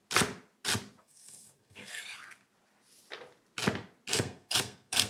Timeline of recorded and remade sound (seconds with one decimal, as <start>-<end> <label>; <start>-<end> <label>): 0.0-1.0 recorded; 1.0-2.0 remade; 2.0-4.1 recorded; 4.1-5.1 remade